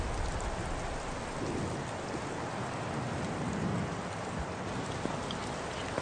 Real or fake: real